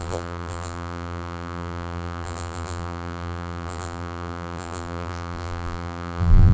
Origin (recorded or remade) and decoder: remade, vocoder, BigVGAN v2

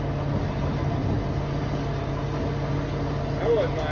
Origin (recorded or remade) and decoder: recorded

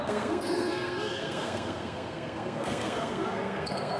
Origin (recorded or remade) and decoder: remade, codec, SNAC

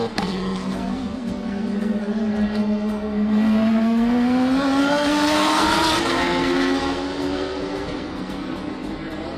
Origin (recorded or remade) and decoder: remade, codec, SNAC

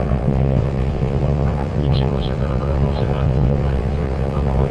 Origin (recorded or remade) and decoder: remade, vocoder, WaveNeXt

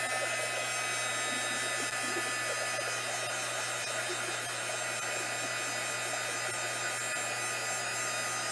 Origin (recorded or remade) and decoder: recorded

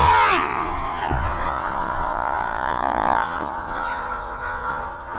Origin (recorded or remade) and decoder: remade, vocoder, Vocos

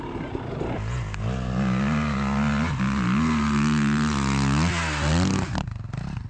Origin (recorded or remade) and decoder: recorded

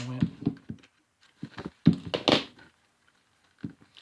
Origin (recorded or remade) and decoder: recorded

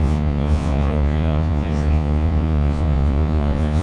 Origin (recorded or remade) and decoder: remade, vocoder, Vocos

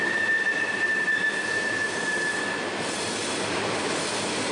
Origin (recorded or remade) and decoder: remade, vocoder, BigVGAN v2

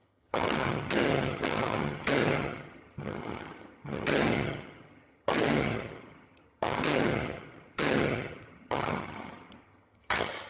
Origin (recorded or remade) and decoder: remade, vocoder, HiFi-GAN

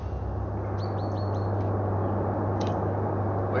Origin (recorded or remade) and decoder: recorded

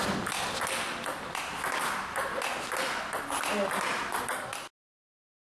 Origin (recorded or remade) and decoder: recorded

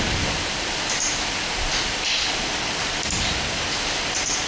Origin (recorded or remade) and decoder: recorded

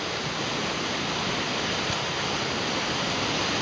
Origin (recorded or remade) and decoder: recorded